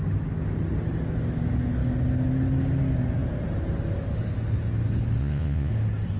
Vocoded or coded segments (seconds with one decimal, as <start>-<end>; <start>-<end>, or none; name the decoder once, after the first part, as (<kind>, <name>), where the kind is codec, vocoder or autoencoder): 5.2-5.7 (vocoder, Vocos)